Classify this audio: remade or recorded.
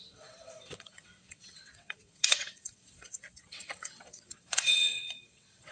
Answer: remade